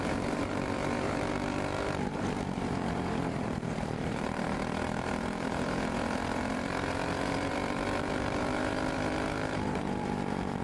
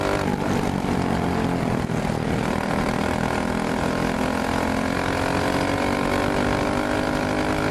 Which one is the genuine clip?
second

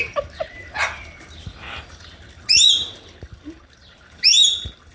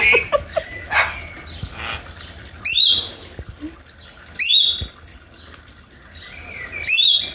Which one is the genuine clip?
second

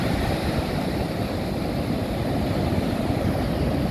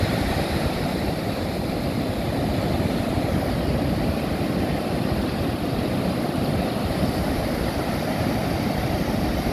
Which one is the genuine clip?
first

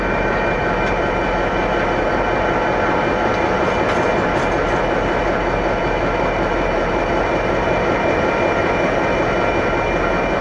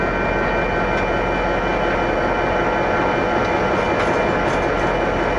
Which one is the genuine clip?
second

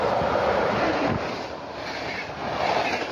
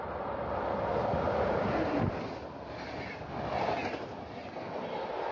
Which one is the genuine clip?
second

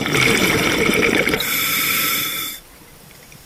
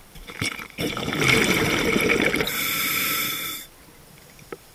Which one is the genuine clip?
second